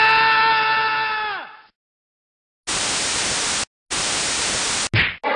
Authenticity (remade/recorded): recorded